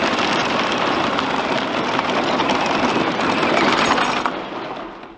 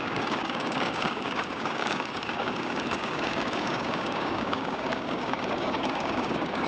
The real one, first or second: first